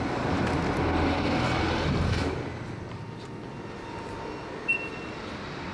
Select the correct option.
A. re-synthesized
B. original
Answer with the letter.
B